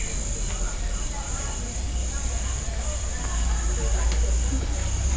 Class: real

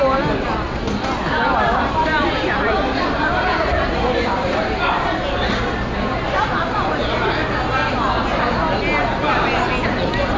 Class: real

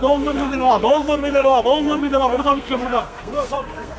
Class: fake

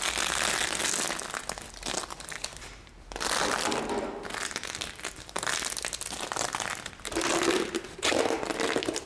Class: real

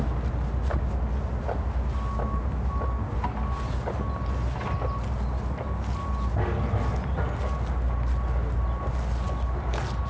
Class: real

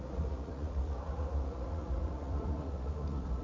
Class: fake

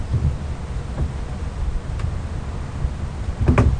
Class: real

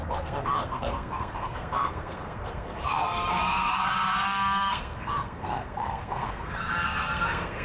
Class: fake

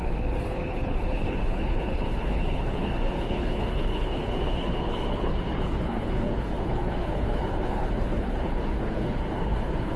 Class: fake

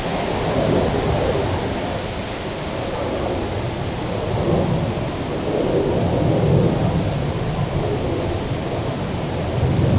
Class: real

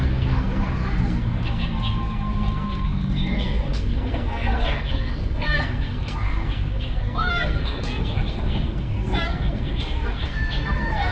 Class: fake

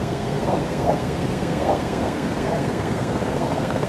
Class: fake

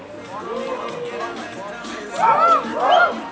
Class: real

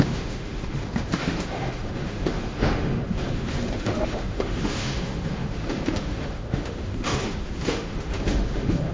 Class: fake